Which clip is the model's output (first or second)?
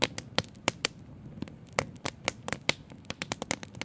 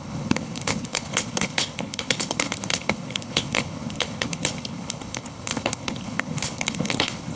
second